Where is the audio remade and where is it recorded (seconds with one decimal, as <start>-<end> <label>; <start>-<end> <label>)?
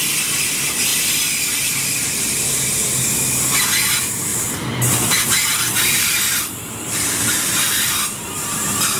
0.0-4.3 recorded; 4.3-8.0 remade; 8.0-9.0 recorded